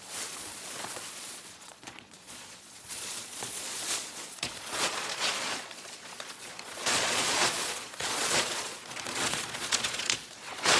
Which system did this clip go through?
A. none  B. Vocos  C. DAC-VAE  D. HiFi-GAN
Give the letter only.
B